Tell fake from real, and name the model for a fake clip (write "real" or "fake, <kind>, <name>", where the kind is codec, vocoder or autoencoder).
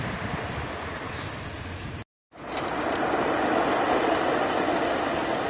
real